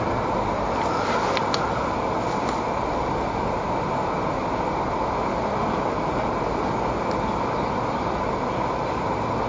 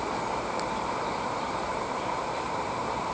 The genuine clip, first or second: first